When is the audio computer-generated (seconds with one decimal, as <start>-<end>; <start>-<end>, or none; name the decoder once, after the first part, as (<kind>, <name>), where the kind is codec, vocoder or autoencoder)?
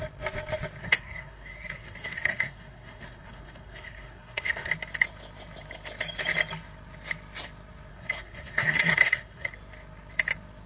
0.8-4.7 (codec, SNAC); 7.9-9.5